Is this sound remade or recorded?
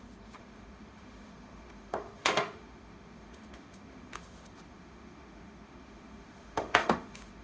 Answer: remade